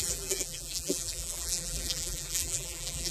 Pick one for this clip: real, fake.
fake